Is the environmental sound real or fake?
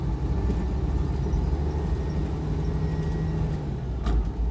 real